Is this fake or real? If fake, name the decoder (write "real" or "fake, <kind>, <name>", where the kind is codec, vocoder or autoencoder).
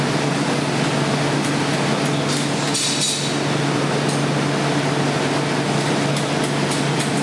real